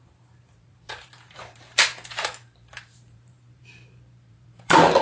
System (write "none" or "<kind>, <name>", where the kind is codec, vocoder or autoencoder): vocoder, BigVGAN v2